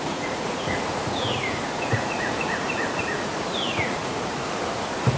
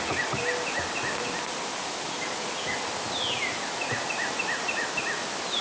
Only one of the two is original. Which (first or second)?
second